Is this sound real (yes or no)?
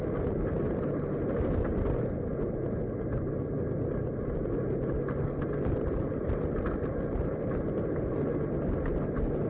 yes